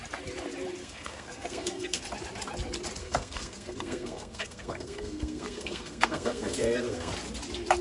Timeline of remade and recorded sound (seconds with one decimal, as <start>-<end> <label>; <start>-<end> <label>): 0.0-0.8 recorded; 0.8-2.0 remade; 2.0-3.0 recorded; 3.0-7.1 remade; 7.1-7.8 recorded